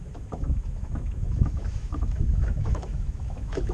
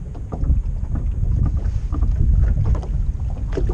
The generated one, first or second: first